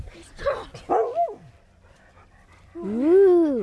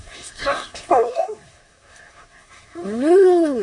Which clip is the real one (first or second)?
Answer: first